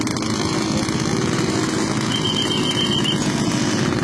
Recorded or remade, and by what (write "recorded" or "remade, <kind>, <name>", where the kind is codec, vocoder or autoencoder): recorded